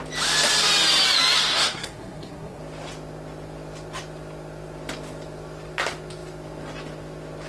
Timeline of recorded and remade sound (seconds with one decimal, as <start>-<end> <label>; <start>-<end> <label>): 0.0-1.5 recorded; 1.5-2.6 remade; 2.6-7.5 recorded